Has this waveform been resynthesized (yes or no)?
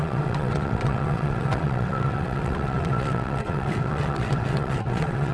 yes